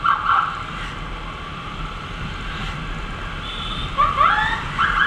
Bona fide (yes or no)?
yes